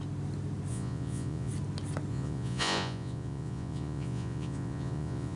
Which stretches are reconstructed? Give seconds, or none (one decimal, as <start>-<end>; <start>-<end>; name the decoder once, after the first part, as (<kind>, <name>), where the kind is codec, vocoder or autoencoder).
0.7-1.5 (vocoder, Vocos); 2.1-5.4